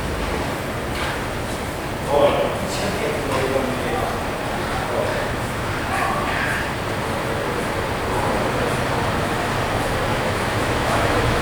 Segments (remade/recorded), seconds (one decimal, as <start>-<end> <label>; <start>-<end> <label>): 0.0-5.1 recorded; 5.1-5.7 remade; 5.7-10.1 recorded; 10.1-11.4 remade